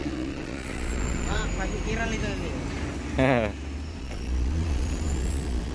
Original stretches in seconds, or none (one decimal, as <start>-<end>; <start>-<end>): 1.4-4.0